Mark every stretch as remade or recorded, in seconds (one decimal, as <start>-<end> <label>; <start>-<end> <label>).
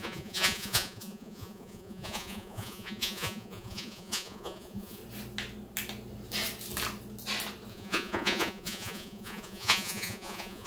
0.0-5.0 remade; 5.0-7.7 recorded; 7.7-10.7 remade